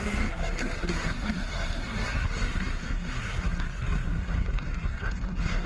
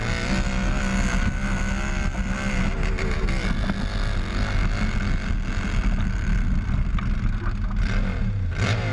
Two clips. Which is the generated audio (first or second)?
first